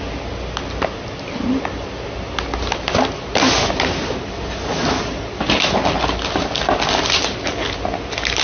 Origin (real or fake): real